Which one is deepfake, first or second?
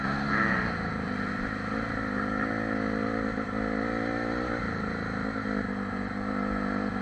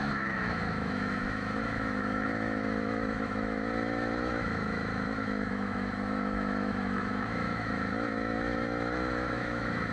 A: second